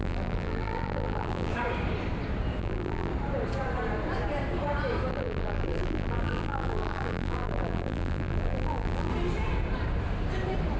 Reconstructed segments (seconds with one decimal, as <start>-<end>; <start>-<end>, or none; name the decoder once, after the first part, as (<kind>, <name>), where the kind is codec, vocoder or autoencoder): 0.0-1.5 (vocoder, BigVGAN v2); 2.6-3.1; 5.1-9.1